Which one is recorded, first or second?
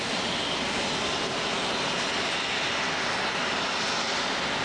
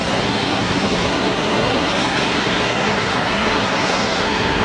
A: first